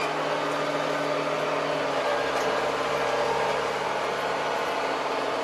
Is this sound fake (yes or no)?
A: no